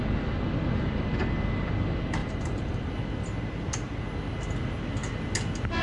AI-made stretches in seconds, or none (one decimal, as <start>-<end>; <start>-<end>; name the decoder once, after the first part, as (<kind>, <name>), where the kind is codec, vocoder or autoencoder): 2.2-2.9 (vocoder, BigVGAN v2)